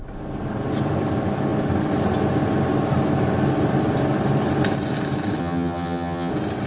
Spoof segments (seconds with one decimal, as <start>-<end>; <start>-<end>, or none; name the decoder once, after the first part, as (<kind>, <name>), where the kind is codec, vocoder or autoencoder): 5.4-6.3 (vocoder, HiFi-GAN)